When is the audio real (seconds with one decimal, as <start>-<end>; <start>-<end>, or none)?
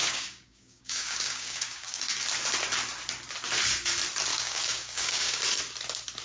2.0-4.3; 5.4-6.2